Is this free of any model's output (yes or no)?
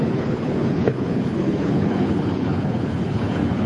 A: no